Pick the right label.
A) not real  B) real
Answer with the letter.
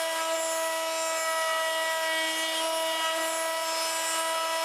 B